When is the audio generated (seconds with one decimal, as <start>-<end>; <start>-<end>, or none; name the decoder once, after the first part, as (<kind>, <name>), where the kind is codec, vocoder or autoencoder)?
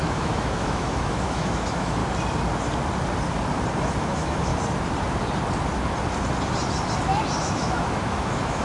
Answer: 0.0-2.0 (autoencoder, DAC-VAE); 4.0-4.5; 7.4-8.6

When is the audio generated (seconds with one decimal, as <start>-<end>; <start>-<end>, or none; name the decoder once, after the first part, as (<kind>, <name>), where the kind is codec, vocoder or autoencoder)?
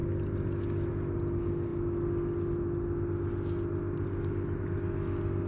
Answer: none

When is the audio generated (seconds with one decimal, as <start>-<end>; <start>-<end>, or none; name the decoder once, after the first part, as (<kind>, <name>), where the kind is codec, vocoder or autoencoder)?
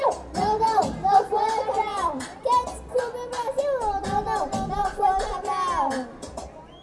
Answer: none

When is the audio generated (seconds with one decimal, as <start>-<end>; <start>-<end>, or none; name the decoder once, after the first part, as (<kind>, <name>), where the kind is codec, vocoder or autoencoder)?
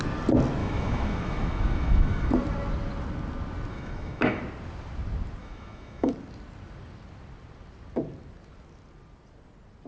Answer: 0.6-2.3 (autoencoder, DAC-VAE); 3.7-4.4; 5.4-6.1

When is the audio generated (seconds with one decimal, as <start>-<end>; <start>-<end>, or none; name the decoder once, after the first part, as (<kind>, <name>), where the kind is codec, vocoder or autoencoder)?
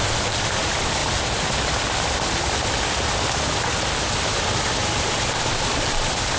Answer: 0.0-1.0 (vocoder, BigVGAN v2); 4.8-6.4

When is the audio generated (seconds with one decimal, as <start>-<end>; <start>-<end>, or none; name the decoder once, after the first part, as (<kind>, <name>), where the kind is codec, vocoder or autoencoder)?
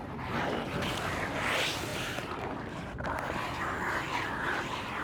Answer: none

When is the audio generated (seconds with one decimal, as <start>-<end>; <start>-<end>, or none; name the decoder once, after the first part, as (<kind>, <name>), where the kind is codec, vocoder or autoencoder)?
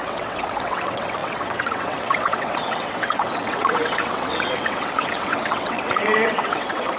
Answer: 0.0-7.0 (vocoder, WaveNeXt)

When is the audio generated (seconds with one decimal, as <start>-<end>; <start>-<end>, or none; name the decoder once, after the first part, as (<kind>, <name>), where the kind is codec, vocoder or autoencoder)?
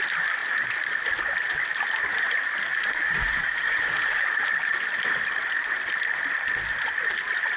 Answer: 2.8-4.2 (vocoder, Vocos)